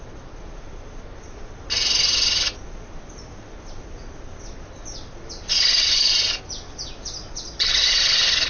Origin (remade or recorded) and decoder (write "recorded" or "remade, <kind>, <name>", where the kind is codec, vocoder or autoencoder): recorded